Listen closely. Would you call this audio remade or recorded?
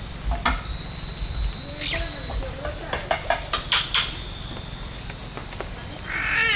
recorded